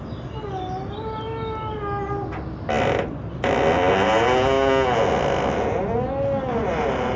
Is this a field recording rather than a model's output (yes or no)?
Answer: yes